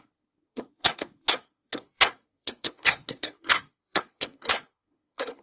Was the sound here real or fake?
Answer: fake